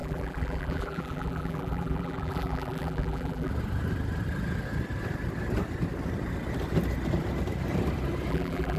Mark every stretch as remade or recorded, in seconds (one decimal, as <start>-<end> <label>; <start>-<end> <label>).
0.0-3.5 remade; 3.5-8.3 recorded; 8.3-8.8 remade